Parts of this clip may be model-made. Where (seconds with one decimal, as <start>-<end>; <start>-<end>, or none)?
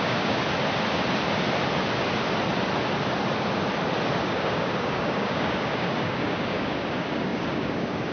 0.0-0.4; 4.1-8.1